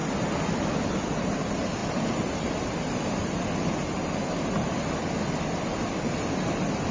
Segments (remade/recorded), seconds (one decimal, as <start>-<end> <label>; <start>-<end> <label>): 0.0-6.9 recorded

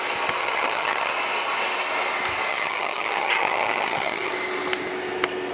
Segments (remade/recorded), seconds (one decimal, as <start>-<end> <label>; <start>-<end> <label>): 0.0-0.4 recorded; 0.4-1.1 remade; 1.1-2.5 recorded; 2.5-4.3 remade; 4.3-5.5 recorded

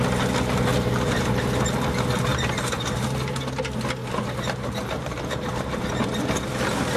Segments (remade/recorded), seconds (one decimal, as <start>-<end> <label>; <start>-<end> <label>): 0.0-0.7 recorded; 0.7-1.4 remade; 1.4-2.3 recorded; 2.3-3.6 remade; 3.6-4.0 recorded; 4.0-5.9 remade; 5.9-7.0 recorded

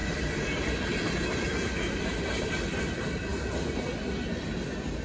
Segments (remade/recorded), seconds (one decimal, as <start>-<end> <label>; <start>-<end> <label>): 0.0-2.5 remade; 2.5-5.0 recorded

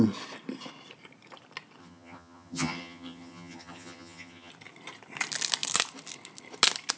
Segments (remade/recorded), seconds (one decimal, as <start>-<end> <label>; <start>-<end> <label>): 0.0-1.8 recorded; 1.8-4.5 remade; 4.5-7.0 recorded

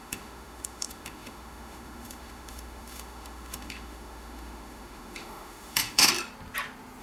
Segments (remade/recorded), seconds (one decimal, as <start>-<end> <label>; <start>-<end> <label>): 0.0-6.1 remade; 6.1-7.0 recorded

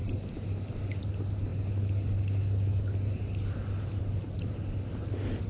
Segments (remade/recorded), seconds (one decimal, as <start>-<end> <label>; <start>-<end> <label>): 0.0-5.5 recorded

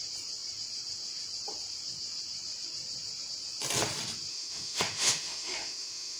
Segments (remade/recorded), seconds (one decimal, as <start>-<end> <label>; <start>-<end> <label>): 0.0-4.3 recorded; 4.3-6.2 remade